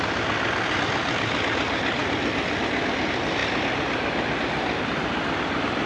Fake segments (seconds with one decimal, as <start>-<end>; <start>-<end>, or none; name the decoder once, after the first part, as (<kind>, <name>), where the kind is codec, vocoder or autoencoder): 0.0-3.4 (vocoder, BigVGAN v2); 4.8-5.9